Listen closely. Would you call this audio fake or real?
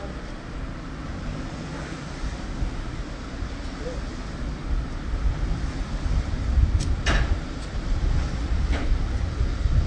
real